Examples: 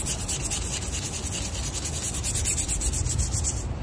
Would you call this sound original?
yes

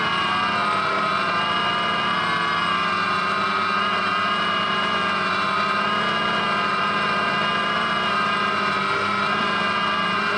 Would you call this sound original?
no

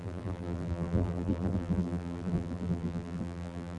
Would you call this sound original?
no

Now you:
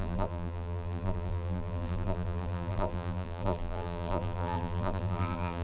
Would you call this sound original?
no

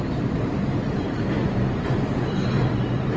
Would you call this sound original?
no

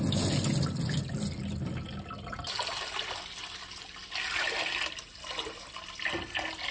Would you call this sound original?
yes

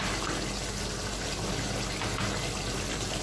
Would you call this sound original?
yes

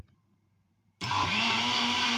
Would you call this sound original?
no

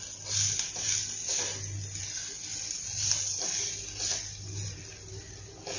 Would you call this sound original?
yes